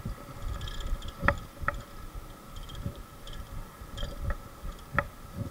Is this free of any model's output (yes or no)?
yes